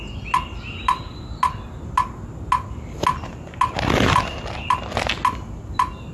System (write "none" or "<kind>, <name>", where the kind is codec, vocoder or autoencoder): none